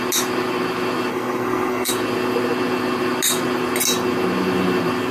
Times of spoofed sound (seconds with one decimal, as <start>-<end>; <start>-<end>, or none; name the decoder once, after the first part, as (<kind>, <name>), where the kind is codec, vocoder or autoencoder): 1.1-1.9 (codec, SNAC)